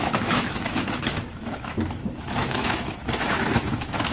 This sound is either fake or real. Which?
fake